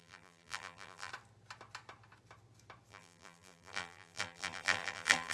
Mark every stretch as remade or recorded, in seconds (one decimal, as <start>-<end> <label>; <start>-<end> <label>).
0.0-1.1 remade; 1.1-2.9 recorded; 2.9-5.3 remade